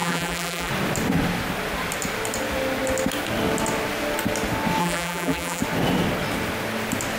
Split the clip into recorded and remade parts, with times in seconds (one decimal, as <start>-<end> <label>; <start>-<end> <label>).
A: 0.0-0.7 remade; 0.7-4.8 recorded; 4.8-5.6 remade; 5.6-7.2 recorded